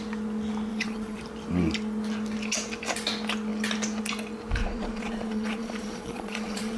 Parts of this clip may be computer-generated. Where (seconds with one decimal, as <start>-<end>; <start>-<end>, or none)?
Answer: 0.7-1.2; 4.6-6.8